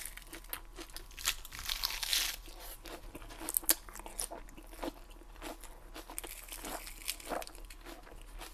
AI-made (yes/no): no